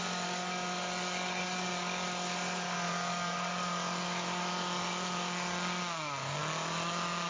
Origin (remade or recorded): remade